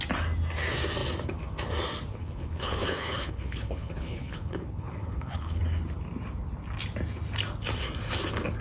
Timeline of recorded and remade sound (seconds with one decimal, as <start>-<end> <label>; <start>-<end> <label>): 0.0-2.1 recorded; 2.1-5.6 remade; 5.6-8.6 recorded